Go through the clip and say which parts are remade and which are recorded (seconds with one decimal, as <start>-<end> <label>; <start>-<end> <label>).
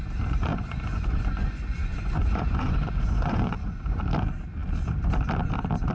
0.0-0.5 recorded; 0.5-4.0 remade; 4.0-5.9 recorded